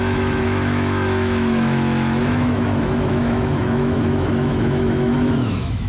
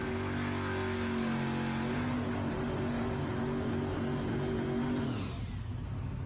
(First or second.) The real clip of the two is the second